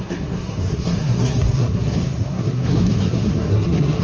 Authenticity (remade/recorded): remade